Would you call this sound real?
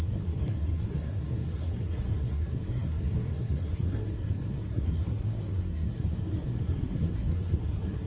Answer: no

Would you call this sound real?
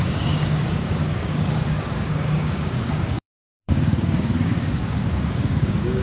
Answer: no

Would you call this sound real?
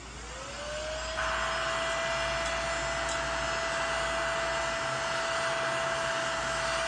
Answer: yes